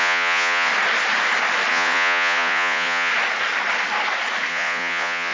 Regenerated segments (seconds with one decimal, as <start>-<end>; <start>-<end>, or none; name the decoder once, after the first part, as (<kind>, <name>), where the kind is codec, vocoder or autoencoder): 0.0-0.7 (vocoder, Vocos); 1.7-3.1; 4.5-5.3